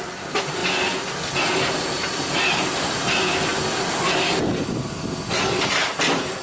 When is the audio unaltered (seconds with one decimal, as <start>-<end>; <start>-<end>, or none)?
0.0-6.4